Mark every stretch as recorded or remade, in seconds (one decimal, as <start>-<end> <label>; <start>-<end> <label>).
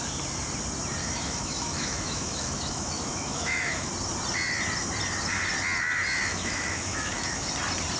0.0-1.0 recorded; 1.0-3.9 remade; 3.9-6.3 recorded; 6.3-7.5 remade; 7.5-8.0 recorded